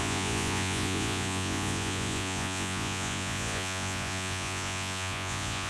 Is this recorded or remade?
remade